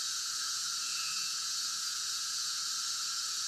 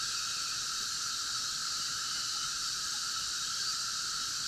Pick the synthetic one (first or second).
first